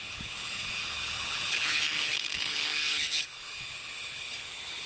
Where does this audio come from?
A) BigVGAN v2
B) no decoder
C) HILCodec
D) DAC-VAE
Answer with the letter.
C